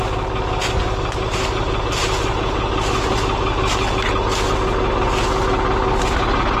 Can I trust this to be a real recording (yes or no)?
yes